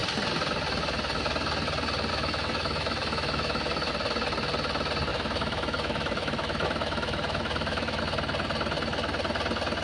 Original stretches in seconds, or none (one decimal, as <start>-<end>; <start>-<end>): 0.0-2.1; 3.9-5.1; 8.0-9.8